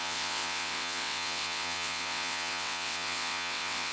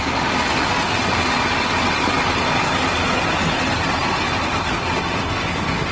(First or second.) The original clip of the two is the second